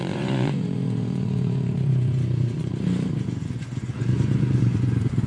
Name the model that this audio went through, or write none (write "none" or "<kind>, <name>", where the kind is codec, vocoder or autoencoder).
vocoder, Vocos